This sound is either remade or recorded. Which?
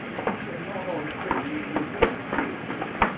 recorded